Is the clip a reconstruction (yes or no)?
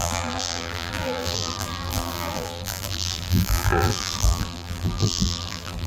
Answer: yes